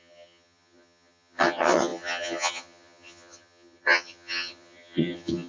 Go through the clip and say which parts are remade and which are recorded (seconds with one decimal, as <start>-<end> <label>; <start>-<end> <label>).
0.0-5.5 remade